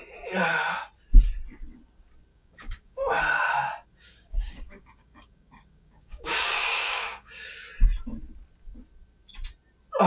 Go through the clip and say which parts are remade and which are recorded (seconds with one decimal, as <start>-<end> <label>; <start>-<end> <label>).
0.0-2.3 recorded; 2.3-3.2 remade; 3.2-4.0 recorded; 4.0-7.5 remade; 7.5-10.1 recorded

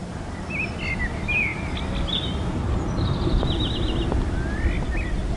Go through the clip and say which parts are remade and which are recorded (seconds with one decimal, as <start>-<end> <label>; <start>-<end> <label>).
0.0-5.4 recorded

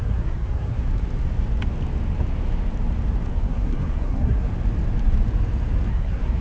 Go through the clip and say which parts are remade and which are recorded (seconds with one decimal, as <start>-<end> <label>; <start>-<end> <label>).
0.0-0.9 remade; 0.9-3.3 recorded; 3.3-4.5 remade; 4.5-5.9 recorded; 5.9-6.4 remade

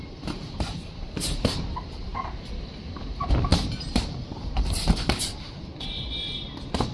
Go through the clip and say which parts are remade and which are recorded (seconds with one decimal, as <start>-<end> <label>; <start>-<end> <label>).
0.0-5.7 remade; 5.7-6.5 recorded; 6.5-6.9 remade